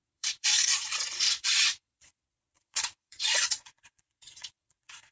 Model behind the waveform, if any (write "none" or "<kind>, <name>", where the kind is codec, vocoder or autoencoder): vocoder, Vocos